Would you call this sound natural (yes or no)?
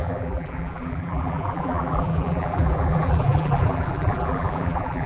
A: no